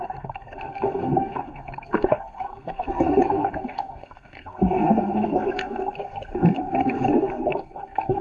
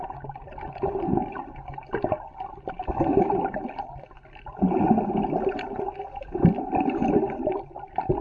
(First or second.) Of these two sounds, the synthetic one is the first